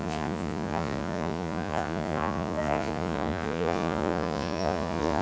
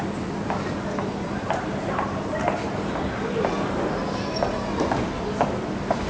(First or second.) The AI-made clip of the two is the first